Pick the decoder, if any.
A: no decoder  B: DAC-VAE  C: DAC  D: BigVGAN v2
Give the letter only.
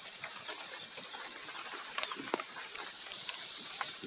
D